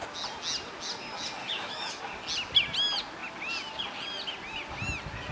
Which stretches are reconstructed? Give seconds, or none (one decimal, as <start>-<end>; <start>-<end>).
1.4-2.0